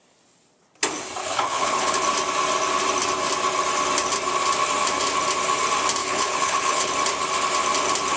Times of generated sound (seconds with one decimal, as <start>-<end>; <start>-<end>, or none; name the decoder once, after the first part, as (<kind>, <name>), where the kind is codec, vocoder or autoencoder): 1.2-2.0 (codec, HILCodec); 6.0-6.9